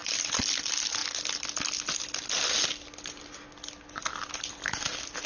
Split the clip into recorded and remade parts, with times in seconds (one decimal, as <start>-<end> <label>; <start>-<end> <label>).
0.0-5.3 recorded